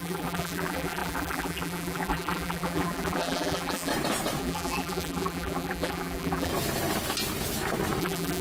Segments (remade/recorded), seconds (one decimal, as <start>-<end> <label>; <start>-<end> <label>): 0.0-3.9 remade; 3.9-4.4 recorded; 4.4-6.5 remade; 6.5-8.0 recorded; 8.0-8.4 remade